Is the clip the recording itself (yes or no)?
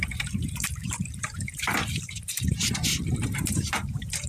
no